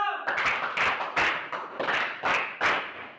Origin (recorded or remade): recorded